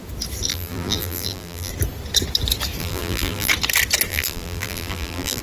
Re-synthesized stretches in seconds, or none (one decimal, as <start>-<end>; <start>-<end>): 0.5-1.7; 2.8-3.5; 4.1-5.4